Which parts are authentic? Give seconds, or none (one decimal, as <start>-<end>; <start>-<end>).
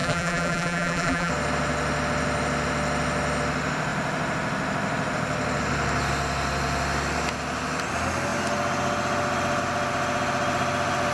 1.3-11.1